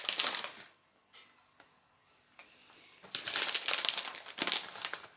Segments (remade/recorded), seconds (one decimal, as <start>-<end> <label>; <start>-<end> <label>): 0.0-2.4 recorded; 2.4-4.7 remade; 4.7-5.2 recorded